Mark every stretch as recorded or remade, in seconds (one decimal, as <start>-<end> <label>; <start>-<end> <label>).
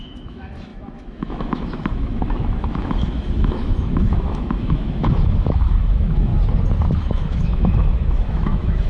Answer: 0.0-6.3 remade; 6.3-7.0 recorded; 7.0-8.9 remade